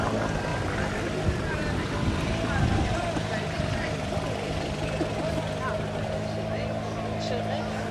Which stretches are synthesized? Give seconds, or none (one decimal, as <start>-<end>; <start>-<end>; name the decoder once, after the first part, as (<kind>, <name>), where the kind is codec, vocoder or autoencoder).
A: 0.5-5.2 (vocoder, BigVGAN v2)